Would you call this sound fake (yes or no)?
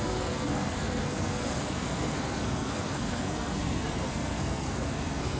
yes